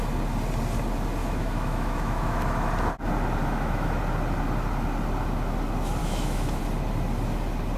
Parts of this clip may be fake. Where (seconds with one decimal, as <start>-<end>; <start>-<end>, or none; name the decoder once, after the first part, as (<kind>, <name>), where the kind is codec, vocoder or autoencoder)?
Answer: 1.2-2.7 (autoencoder, DAC-VAE); 3.4-4.0; 6.0-6.6

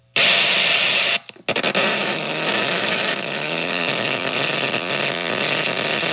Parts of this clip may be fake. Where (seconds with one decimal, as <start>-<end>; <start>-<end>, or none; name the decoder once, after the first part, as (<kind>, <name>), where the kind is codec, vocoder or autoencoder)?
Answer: 2.0-4.3 (autoencoder, DAC-VAE)

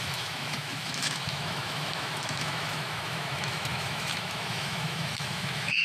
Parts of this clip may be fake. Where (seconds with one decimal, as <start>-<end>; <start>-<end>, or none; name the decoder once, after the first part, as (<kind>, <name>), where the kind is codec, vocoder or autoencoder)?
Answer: 0.0-5.8 (autoencoder, DAC-VAE)

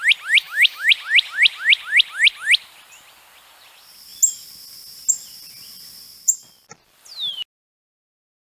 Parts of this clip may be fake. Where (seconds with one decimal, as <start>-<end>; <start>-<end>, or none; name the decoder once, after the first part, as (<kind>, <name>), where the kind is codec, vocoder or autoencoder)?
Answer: 0.4-0.9 (autoencoder, DAC-VAE)